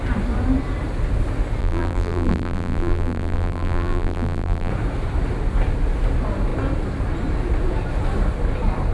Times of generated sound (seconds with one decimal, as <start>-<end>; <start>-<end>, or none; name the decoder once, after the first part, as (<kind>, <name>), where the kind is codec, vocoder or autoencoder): 1.6-4.7 (vocoder, BigVGAN v2)